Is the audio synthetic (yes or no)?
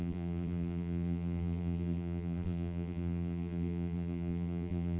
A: yes